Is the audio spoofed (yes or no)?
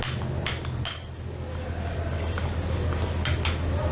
no